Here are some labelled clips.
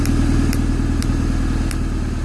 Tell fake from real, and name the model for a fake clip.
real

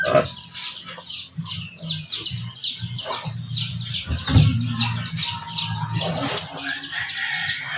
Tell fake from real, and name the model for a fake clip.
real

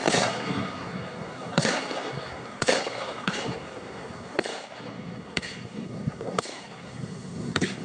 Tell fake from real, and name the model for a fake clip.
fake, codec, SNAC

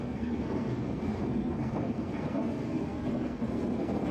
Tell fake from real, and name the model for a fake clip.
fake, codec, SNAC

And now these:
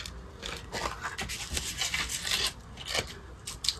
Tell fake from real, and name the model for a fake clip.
real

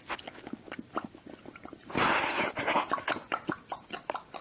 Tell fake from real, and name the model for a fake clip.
real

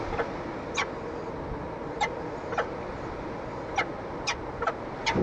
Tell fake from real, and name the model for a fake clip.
real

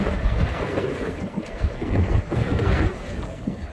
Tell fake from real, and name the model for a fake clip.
fake, codec, SNAC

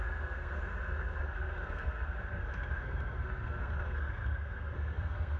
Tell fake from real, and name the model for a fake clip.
fake, codec, SNAC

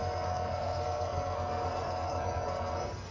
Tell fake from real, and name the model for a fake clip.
fake, codec, SNAC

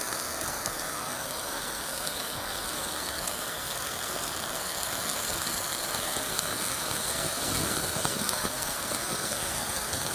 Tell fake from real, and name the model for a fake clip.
fake, codec, SNAC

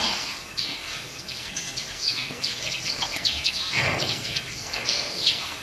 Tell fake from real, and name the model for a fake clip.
fake, codec, SNAC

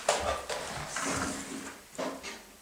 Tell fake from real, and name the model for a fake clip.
real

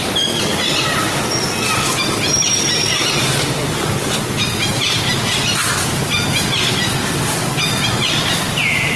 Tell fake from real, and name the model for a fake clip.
real